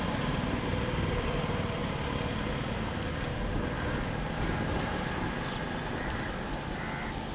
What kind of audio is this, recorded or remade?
recorded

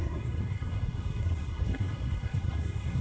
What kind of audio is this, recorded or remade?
remade